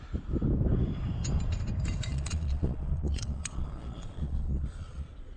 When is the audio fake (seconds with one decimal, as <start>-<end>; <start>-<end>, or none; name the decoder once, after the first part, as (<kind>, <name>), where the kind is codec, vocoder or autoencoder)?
2.1-5.4 (vocoder, Vocos)